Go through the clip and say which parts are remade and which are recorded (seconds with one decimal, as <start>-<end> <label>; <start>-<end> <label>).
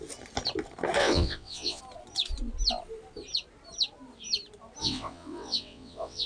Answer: 0.0-1.0 recorded; 1.0-1.8 remade; 1.8-4.8 recorded; 4.8-6.3 remade